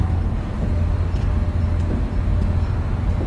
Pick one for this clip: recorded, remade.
recorded